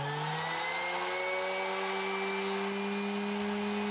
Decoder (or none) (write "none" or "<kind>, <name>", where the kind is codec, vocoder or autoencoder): none